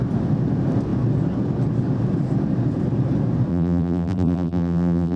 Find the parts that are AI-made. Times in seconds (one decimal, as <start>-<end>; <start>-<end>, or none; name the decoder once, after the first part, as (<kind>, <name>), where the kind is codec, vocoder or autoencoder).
3.5-5.2 (vocoder, BigVGAN v2)